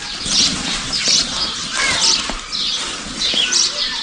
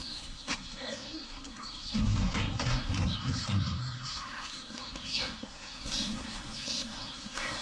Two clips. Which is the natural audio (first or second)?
first